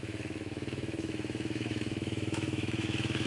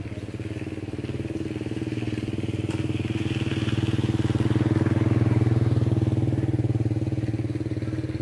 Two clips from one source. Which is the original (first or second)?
second